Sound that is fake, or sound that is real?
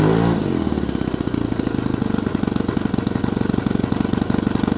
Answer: real